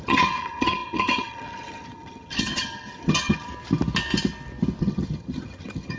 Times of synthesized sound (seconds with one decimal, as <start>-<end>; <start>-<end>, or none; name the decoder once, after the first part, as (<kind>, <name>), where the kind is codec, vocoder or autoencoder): 0.0-3.5 (vocoder, HiFi-GAN); 4.8-6.0